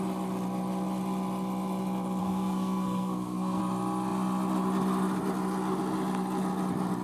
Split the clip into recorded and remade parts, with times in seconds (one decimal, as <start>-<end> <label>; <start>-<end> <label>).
0.0-2.2 recorded; 2.2-3.6 remade; 3.6-7.0 recorded